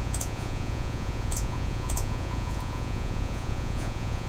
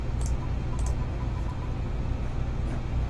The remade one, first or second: first